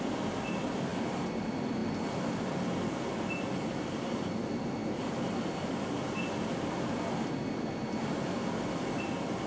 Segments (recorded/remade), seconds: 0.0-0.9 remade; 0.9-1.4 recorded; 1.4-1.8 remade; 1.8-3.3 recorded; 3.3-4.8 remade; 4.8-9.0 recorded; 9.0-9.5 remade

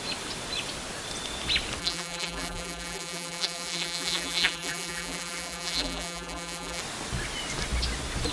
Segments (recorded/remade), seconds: 0.0-1.8 recorded; 1.8-6.8 remade; 6.8-8.3 recorded

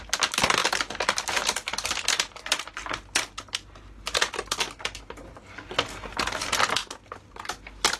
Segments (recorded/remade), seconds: 0.0-8.0 recorded

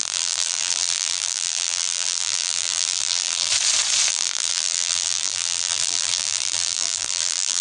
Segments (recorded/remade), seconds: 0.0-3.5 remade; 3.5-4.1 recorded; 4.1-7.6 remade

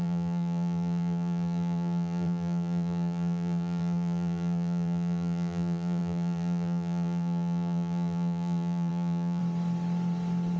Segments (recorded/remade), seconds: 0.0-9.4 remade; 9.4-10.6 recorded

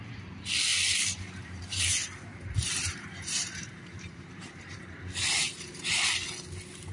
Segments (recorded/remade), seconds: 0.0-0.7 recorded; 0.7-4.8 remade; 4.8-5.4 recorded; 5.4-5.9 remade; 5.9-6.9 recorded

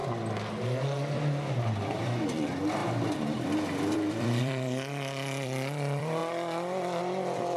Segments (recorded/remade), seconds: 0.0-1.5 recorded; 1.5-6.2 remade; 6.2-7.0 recorded; 7.0-7.6 remade